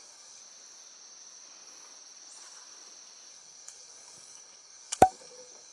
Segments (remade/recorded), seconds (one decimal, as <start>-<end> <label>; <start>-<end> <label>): 0.0-0.4 remade; 0.4-3.3 recorded; 3.3-5.7 remade